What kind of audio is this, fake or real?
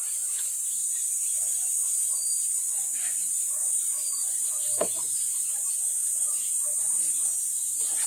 fake